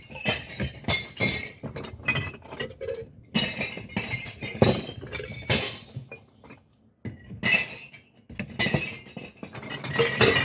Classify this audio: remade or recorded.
recorded